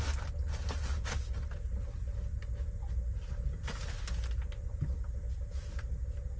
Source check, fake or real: real